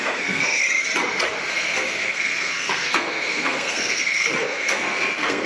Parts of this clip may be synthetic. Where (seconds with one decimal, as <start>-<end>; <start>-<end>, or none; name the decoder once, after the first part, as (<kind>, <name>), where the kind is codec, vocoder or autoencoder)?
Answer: 0.0-0.6 (codec, SNAC); 1.5-5.5

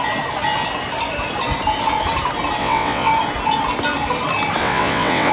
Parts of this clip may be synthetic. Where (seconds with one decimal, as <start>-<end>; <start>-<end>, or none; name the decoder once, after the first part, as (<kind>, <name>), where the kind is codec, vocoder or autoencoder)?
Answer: 2.6-3.1 (vocoder, WaveNeXt); 4.6-5.3

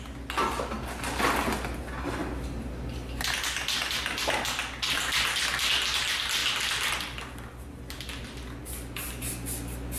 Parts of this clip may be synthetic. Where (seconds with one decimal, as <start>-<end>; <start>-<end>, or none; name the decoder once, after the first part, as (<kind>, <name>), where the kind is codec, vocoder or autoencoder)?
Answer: none

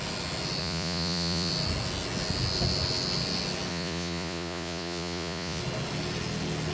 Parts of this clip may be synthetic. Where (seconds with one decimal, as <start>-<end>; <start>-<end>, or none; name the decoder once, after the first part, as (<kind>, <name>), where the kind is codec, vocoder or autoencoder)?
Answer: 0.6-1.5 (vocoder, Vocos); 3.7-5.6